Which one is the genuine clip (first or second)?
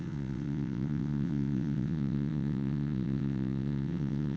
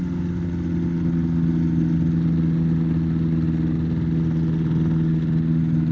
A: second